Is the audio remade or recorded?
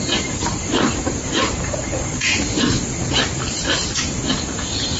remade